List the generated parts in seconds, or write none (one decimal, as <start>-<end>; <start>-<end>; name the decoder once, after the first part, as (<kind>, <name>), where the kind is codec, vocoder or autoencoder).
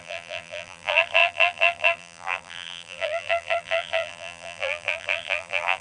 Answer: 0.0-5.8 (vocoder, BigVGAN v2)